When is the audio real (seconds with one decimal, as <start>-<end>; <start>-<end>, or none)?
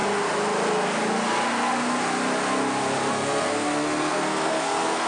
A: 0.0-3.1